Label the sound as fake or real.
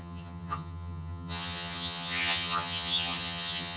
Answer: fake